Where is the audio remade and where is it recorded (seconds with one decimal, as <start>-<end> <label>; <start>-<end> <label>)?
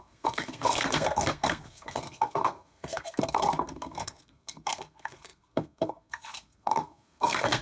0.0-7.6 remade